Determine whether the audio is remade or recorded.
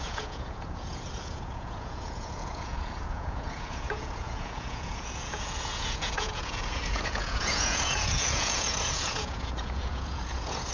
remade